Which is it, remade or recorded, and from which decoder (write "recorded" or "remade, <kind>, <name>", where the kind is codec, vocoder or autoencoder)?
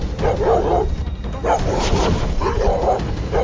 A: recorded